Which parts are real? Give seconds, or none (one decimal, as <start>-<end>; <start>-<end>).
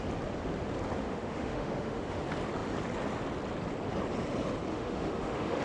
0.0-1.0; 2.2-4.7